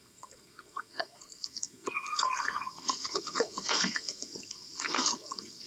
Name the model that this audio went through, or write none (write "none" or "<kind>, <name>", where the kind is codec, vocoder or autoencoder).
codec, SNAC